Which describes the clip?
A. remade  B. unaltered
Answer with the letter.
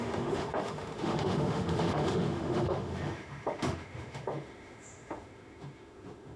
A